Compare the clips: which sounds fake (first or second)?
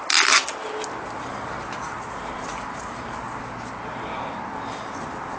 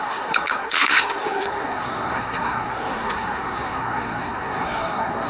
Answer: second